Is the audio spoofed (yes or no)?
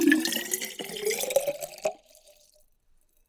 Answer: no